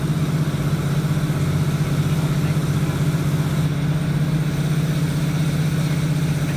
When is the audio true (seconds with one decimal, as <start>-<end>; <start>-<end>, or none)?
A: 0.0-6.6